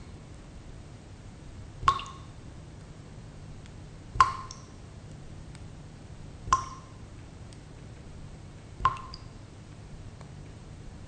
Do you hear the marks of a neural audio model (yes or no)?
yes